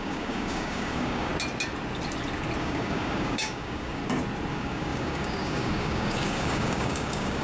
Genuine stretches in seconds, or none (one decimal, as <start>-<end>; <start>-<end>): 1.3-2.6; 4.0-4.5